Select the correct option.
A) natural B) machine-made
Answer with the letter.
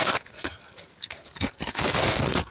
B